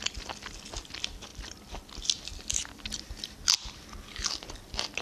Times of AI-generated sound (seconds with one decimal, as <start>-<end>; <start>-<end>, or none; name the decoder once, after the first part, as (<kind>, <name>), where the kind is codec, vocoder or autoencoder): none